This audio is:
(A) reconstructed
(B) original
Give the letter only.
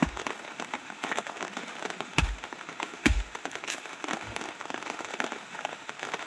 A